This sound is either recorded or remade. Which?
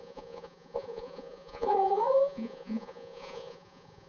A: remade